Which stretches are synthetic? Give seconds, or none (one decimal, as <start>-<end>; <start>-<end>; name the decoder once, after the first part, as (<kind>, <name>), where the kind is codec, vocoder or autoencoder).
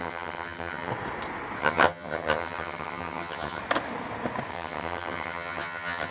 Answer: 0.0-0.9 (vocoder, HiFi-GAN); 1.6-3.6; 4.5-6.1